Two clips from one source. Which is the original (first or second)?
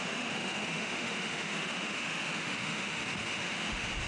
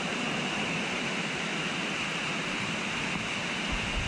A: second